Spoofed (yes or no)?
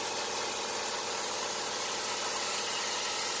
no